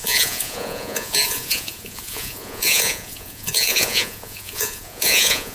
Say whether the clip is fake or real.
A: fake